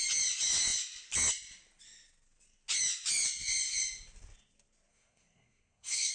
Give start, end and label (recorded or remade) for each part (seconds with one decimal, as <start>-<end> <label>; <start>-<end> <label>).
0.0-4.9 recorded; 4.9-6.1 remade